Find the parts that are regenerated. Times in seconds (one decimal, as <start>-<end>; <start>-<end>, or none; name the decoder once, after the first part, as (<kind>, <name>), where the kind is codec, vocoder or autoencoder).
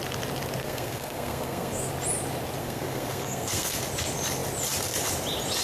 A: 0.6-1.9 (codec, SNAC); 2.6-3.8